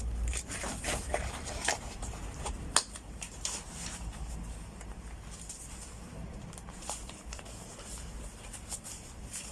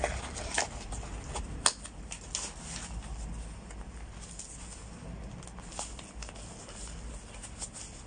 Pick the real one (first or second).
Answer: second